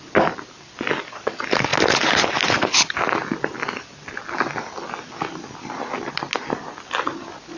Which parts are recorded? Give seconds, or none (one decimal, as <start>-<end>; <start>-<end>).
0.0-7.6